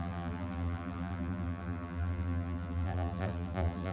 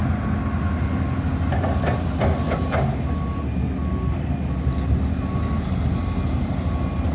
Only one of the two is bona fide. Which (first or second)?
second